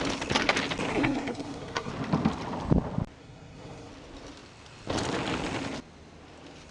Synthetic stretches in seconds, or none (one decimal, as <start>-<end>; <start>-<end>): 0.9-1.9; 3.2-3.9